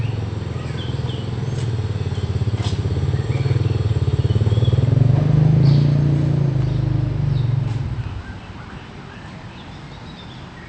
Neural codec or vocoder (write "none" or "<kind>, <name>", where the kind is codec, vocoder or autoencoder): none